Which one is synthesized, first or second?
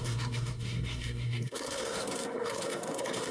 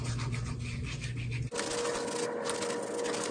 first